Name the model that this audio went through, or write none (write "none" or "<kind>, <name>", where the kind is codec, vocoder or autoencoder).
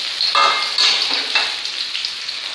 none